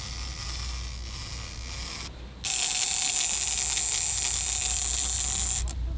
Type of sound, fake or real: real